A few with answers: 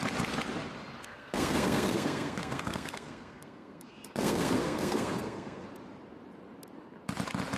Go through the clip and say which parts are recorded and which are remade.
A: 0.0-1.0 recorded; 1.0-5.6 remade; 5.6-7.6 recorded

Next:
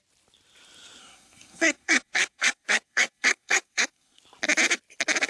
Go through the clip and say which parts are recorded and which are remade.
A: 0.0-1.0 recorded; 1.0-4.2 remade; 4.2-5.3 recorded

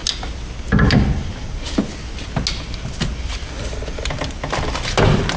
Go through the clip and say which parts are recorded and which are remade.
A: 0.0-5.4 recorded

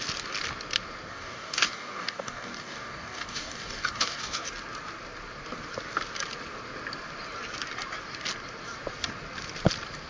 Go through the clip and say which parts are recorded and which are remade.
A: 0.0-1.1 recorded; 1.1-4.5 remade; 4.5-10.1 recorded